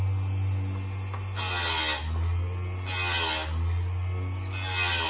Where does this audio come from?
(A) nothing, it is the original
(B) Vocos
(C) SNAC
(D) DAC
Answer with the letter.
A